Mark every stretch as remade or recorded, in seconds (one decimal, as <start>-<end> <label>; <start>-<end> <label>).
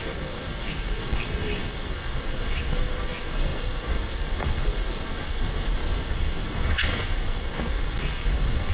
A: 0.0-8.7 remade